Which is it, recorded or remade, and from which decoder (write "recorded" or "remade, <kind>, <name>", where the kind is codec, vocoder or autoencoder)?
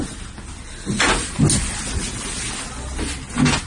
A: recorded